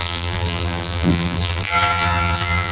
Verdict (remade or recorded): remade